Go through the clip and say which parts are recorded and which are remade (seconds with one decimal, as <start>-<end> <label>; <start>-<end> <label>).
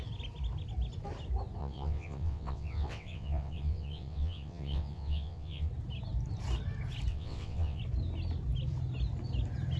0.0-1.6 recorded; 1.6-5.7 remade; 5.7-7.1 recorded; 7.1-7.8 remade; 7.8-9.8 recorded